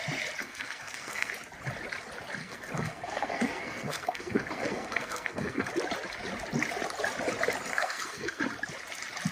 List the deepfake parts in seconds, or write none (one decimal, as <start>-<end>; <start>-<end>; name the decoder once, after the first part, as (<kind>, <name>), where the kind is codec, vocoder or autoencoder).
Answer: 0.4-1.3 (codec, SNAC); 2.4-5.7; 7.7-8.4